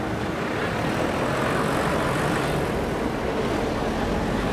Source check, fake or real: real